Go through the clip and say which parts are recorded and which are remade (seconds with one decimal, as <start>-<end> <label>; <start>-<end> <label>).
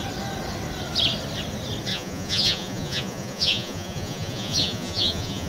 0.0-1.9 recorded; 1.9-5.5 remade